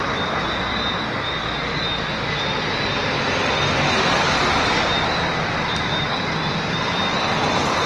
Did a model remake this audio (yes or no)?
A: no